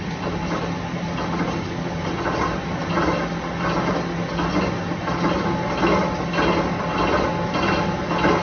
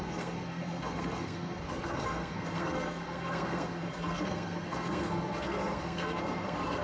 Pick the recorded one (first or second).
first